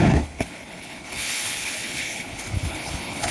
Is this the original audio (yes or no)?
no